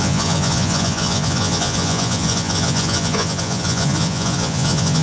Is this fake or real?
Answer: fake